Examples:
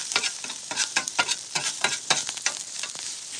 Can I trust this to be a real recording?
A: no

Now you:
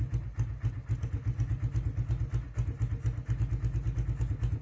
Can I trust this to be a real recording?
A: yes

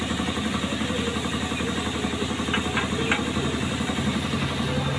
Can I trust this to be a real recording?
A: yes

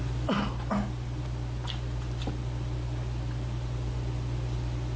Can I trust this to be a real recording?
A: yes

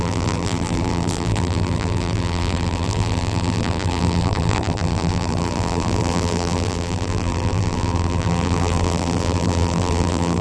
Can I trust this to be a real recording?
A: no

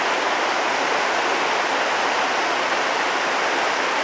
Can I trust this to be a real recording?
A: yes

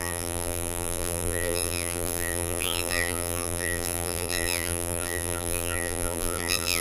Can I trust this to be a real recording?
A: no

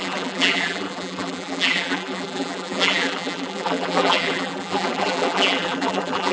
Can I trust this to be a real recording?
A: no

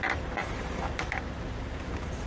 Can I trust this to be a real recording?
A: no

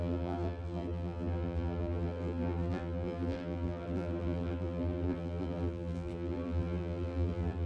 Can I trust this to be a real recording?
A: no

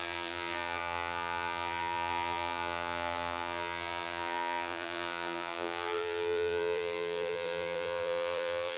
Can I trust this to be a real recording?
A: no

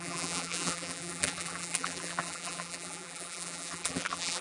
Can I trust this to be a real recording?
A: no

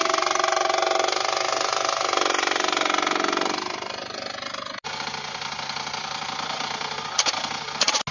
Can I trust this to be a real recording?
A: yes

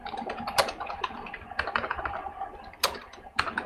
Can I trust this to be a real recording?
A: no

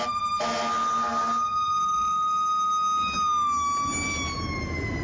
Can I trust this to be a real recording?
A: yes